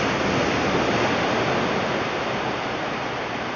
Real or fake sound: real